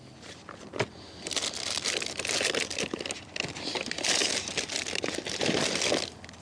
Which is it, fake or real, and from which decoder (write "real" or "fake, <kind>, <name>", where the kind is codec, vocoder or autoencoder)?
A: real